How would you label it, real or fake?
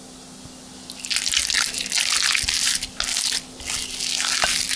real